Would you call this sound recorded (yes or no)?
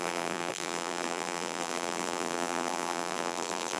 no